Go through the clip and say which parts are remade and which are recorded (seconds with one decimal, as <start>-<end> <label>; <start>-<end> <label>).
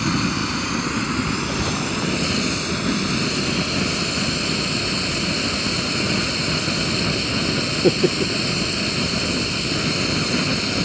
0.0-10.8 recorded